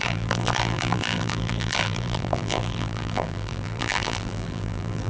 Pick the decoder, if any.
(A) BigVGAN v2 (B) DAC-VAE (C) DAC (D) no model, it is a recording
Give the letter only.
A